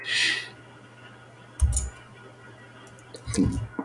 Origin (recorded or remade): recorded